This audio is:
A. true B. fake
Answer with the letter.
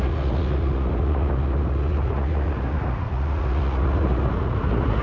B